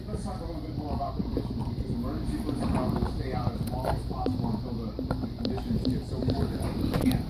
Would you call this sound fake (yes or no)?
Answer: yes